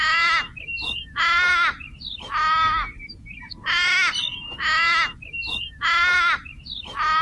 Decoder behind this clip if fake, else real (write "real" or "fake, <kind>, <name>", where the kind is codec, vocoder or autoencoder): real